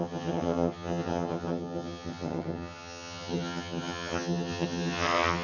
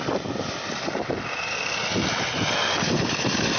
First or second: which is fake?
first